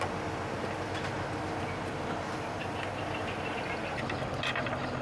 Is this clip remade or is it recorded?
recorded